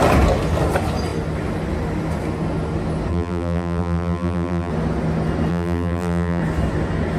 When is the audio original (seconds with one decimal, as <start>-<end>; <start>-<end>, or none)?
0.0-3.1; 4.7-5.5; 6.4-7.2